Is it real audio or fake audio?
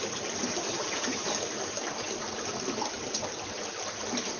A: fake